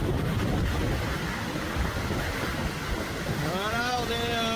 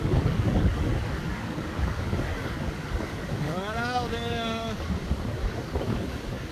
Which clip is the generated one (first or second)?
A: second